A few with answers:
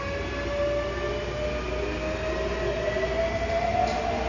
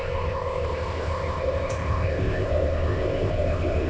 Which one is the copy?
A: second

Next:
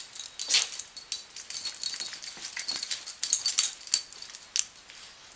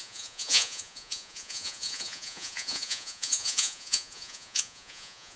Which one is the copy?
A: second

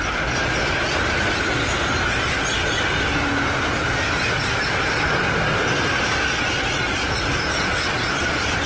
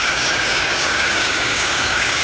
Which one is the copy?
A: second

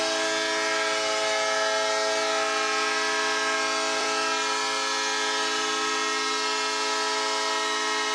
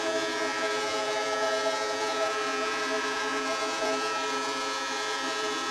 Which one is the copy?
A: second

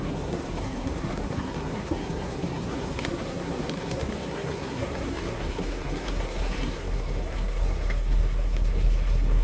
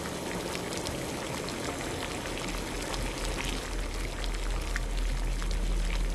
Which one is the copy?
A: first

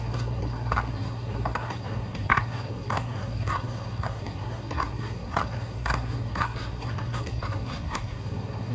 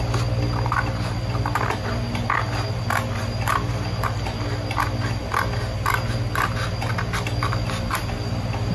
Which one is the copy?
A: first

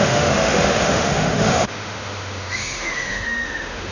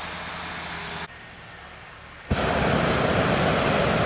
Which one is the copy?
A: first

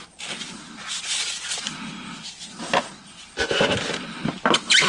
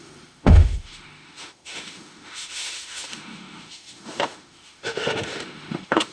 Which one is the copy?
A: second